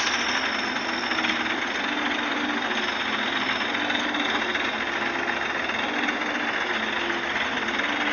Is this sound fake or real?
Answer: real